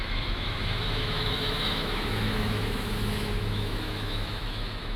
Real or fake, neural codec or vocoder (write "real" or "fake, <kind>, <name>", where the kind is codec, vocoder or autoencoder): fake, autoencoder, DAC-VAE